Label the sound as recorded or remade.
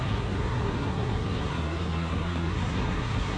remade